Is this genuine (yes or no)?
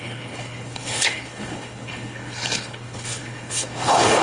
no